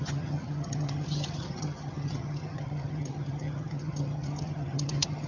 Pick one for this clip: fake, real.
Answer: fake